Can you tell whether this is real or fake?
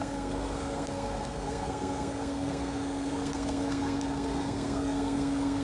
fake